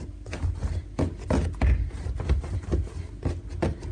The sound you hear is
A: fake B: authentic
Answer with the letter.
B